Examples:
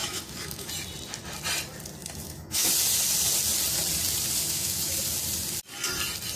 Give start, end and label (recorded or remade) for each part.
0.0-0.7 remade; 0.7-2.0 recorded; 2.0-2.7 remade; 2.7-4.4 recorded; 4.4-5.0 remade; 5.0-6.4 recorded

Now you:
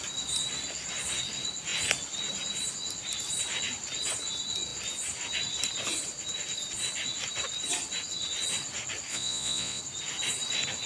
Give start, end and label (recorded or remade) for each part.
0.0-9.1 recorded; 9.1-9.8 remade; 9.8-10.9 recorded